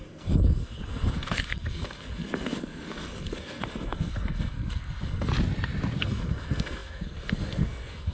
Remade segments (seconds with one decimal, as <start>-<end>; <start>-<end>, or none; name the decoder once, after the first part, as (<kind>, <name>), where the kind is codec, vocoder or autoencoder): 0.0-5.3 (codec, SNAC); 6.0-8.1